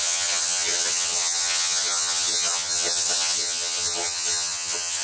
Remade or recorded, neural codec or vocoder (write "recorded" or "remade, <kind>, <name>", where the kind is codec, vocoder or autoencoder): remade, vocoder, HiFi-GAN